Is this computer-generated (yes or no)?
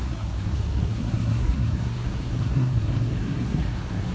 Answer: yes